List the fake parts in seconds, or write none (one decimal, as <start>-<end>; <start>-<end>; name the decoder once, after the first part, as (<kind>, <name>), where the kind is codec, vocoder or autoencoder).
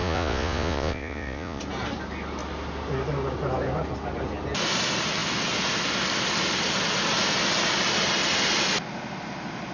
0.0-1.6 (vocoder, Vocos)